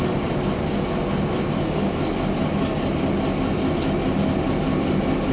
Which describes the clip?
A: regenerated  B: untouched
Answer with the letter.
B